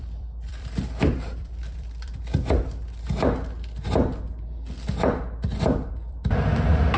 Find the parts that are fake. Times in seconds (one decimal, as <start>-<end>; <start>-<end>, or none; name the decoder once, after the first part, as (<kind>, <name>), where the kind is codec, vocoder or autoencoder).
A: 0.0-2.1 (vocoder, BigVGAN v2); 5.9-7.0